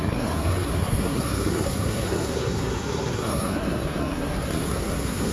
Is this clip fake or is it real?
fake